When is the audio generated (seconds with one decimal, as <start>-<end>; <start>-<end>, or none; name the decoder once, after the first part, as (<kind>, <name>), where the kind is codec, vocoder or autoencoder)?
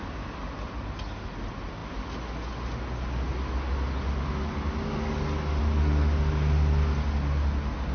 none